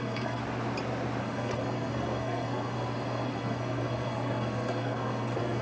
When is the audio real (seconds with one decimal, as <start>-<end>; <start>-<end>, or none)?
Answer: 0.4-1.2